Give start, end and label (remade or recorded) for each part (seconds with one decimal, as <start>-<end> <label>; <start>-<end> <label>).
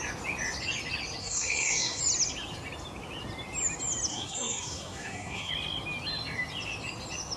0.0-1.2 recorded; 1.2-2.0 remade; 2.0-4.1 recorded; 4.1-5.5 remade; 5.5-7.4 recorded